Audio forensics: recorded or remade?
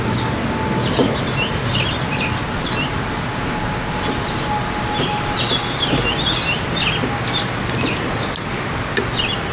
recorded